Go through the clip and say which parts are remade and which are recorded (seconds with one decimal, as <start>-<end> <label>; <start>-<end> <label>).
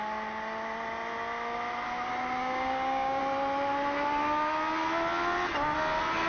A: 0.0-2.4 recorded; 2.4-3.2 remade; 3.2-6.3 recorded